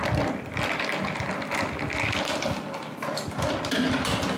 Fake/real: real